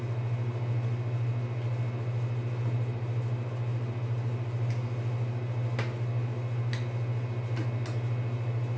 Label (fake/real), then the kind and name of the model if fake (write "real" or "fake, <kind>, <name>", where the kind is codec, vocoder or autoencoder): real